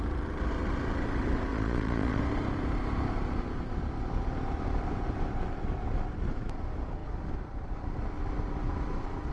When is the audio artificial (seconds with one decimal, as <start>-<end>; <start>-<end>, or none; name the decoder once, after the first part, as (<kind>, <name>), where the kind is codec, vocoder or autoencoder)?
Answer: 1.5-2.2 (vocoder, Vocos)